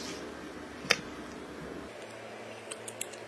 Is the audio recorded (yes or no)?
yes